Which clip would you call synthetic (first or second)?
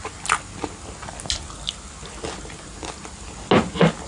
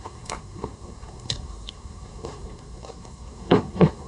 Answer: second